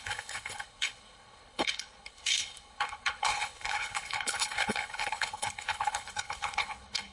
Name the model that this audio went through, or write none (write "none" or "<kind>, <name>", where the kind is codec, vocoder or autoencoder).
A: codec, HILCodec